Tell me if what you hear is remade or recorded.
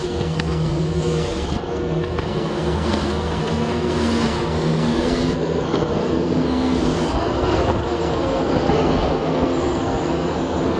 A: remade